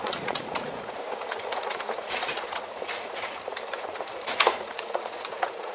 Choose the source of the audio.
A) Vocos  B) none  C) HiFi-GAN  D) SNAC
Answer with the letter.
A